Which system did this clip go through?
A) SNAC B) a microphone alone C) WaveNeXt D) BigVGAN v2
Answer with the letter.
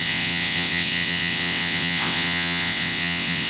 C